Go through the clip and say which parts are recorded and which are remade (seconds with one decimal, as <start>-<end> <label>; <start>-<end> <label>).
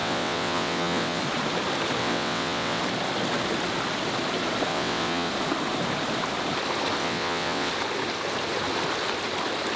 0.0-1.2 remade; 1.2-2.0 recorded; 2.0-2.8 remade; 2.8-4.7 recorded; 4.7-5.3 remade; 5.3-7.0 recorded; 7.0-7.7 remade; 7.7-9.8 recorded